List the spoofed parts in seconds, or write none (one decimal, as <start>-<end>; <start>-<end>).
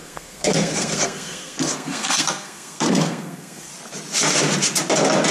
0.0-3.7